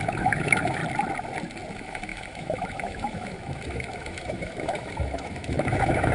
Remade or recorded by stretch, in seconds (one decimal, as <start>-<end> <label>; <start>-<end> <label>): 0.0-0.8 remade; 0.8-1.7 recorded; 1.7-6.1 remade